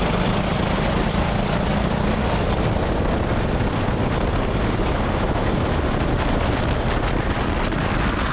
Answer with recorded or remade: recorded